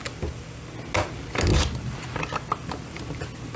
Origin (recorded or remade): recorded